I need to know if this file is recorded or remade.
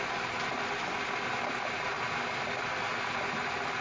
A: recorded